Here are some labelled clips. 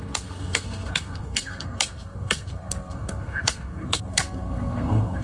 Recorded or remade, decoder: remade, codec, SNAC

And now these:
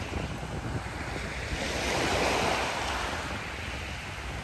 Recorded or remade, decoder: recorded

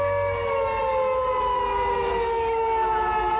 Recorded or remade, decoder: recorded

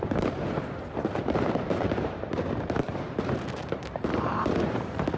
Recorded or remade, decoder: remade, vocoder, BigVGAN v2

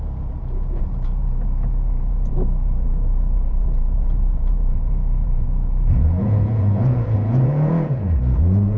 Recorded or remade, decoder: remade, vocoder, Vocos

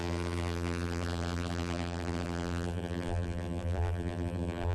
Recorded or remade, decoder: remade, vocoder, BigVGAN v2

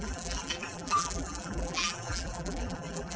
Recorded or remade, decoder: remade, vocoder, BigVGAN v2